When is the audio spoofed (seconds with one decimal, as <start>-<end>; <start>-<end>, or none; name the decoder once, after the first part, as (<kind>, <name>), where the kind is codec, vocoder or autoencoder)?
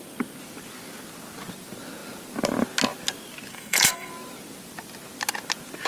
3.5-4.1 (codec, SNAC)